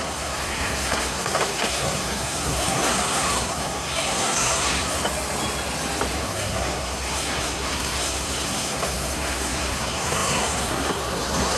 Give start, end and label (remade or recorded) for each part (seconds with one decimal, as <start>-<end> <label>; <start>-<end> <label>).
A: 0.0-5.0 remade; 5.0-6.2 recorded; 6.2-11.6 remade